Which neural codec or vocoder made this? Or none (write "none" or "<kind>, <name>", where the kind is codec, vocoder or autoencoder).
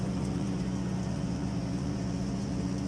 vocoder, Vocos